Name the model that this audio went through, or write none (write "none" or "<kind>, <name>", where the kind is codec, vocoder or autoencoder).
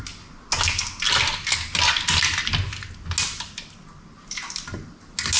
none